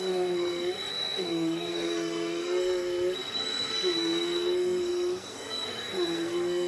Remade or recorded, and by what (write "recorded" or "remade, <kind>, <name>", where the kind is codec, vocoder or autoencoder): remade, codec, SNAC